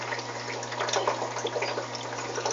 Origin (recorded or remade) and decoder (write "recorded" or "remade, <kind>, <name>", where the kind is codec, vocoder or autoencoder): recorded